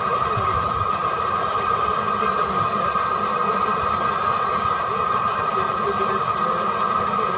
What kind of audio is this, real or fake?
real